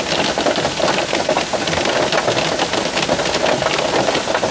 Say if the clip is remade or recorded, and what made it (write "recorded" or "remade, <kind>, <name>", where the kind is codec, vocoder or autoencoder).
recorded